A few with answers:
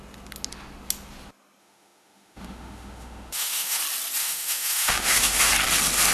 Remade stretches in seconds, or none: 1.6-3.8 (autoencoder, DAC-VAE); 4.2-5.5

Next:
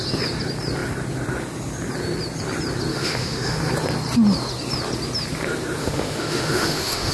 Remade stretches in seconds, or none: 2.9-3.7 (autoencoder, DAC-VAE); 5.8-7.1

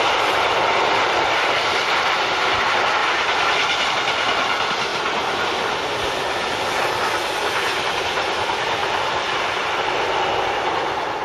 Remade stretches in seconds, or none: 0.0-3.0 (vocoder, BigVGAN v2); 3.9-11.2

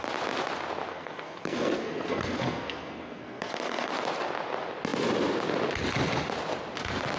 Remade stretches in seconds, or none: 0.9-3.9 (codec, SNAC)

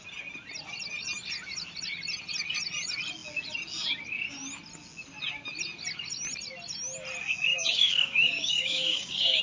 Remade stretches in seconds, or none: 7.5-9.4 (codec, DAC)